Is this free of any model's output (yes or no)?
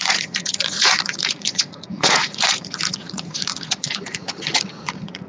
no